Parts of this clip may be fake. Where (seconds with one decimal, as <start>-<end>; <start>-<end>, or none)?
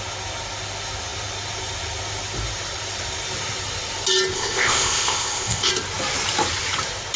4.3-5.7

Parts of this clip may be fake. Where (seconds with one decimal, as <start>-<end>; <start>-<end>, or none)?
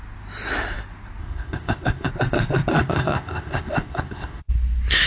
1.2-2.1; 2.7-4.5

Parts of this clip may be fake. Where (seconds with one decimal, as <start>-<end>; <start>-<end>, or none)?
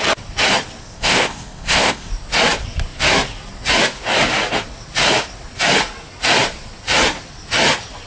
0.8-2.1